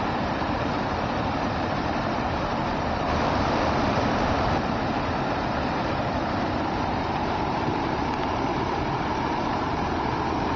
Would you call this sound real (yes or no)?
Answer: no